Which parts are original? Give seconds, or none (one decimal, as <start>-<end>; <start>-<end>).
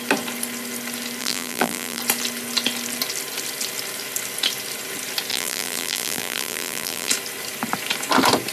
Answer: 0.0-1.2; 2.0-5.3; 7.1-8.5